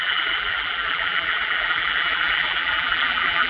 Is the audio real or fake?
fake